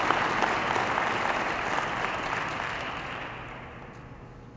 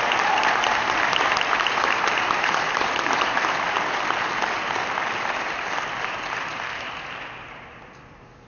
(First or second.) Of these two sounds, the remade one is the second